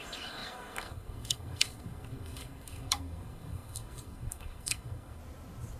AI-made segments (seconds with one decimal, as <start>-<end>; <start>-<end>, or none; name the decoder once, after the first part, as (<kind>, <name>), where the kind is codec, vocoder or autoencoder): 0.0-5.2 (codec, SNAC)